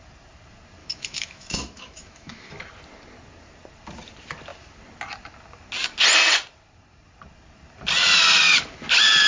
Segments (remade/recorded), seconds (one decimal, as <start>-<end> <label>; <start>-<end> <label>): 0.0-0.8 recorded; 0.8-2.5 remade; 2.5-9.3 recorded